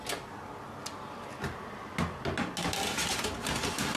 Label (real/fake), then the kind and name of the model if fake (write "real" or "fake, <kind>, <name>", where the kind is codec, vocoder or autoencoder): real